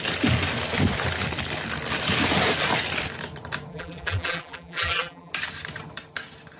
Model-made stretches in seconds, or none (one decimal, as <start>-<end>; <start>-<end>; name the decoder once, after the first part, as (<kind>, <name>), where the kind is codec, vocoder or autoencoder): 3.7-5.3 (vocoder, BigVGAN v2)